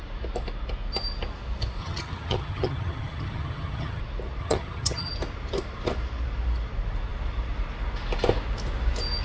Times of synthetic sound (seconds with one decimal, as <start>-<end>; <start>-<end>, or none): 1.8-4.0; 4.4-5.1